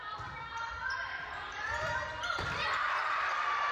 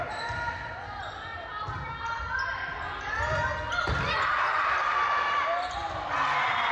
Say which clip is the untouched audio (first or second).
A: second